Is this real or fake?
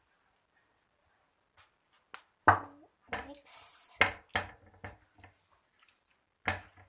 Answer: real